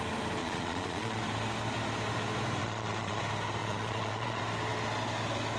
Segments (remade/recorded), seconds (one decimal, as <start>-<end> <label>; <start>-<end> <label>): 0.0-0.4 recorded; 0.4-1.2 remade; 1.2-2.6 recorded; 2.6-3.2 remade; 3.2-3.6 recorded; 3.6-4.4 remade; 4.4-5.6 recorded

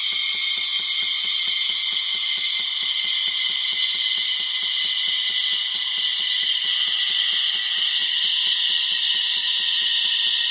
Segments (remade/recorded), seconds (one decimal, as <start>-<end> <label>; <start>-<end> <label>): 0.0-10.5 recorded

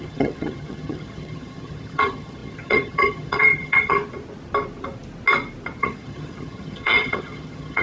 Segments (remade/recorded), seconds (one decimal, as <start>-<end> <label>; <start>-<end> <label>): 0.0-4.0 remade; 4.0-5.8 recorded; 5.8-7.8 remade

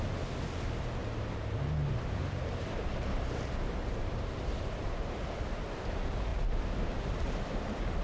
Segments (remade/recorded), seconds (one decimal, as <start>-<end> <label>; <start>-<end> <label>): 0.0-1.0 recorded; 1.0-5.8 remade; 5.8-8.0 recorded

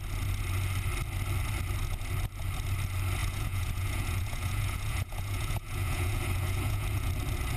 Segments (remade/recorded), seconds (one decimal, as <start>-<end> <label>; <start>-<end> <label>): 0.0-3.2 recorded; 3.2-7.1 remade; 7.1-7.6 recorded